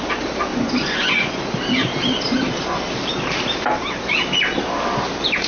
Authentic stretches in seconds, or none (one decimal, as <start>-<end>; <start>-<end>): 0.0-0.5; 1.4-5.5